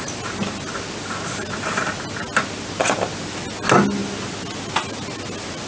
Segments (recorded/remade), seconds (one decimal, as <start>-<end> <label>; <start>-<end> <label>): 0.0-5.7 recorded